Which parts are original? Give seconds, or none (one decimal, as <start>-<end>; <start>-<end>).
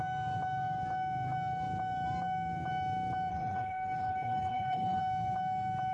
0.0-3.3; 5.0-5.9